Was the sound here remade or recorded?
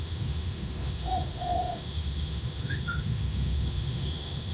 remade